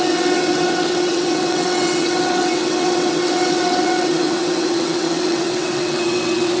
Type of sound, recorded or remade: remade